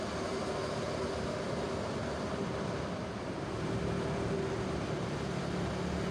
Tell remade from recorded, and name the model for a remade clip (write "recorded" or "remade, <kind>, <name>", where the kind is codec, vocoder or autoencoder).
recorded